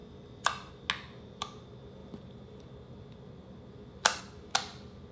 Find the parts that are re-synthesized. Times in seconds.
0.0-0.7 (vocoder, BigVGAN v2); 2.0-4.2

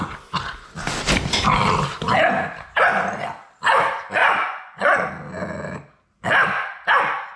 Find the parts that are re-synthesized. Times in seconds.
4.2-5.1 (vocoder, Vocos)

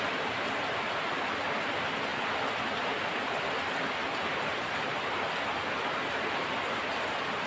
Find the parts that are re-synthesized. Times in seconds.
none

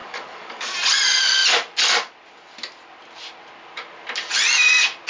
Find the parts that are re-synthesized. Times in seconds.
0.0-0.7 (codec, DAC)

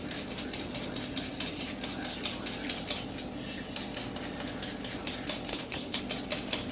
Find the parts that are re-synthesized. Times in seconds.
5.5-6.0 (codec, HILCodec)